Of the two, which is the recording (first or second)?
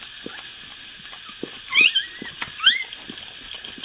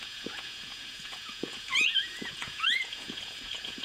first